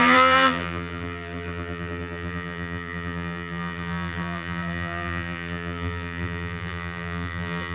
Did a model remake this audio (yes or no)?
yes